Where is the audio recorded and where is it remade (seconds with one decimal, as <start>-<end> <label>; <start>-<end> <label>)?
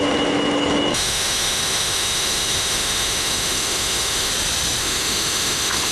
0.0-0.9 recorded; 0.9-4.3 remade; 4.3-4.8 recorded; 4.8-5.9 remade